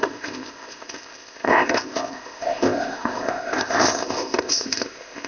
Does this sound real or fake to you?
fake